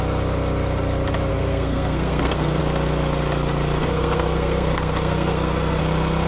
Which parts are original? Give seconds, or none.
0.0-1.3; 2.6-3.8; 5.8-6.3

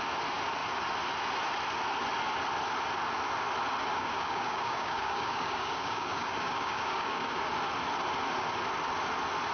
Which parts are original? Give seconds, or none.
0.0-3.9; 7.5-9.5